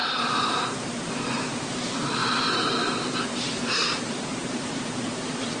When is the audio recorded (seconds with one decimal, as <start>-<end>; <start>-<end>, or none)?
2.2-3.0